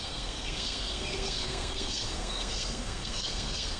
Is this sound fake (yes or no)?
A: yes